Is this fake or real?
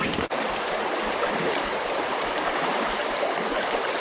fake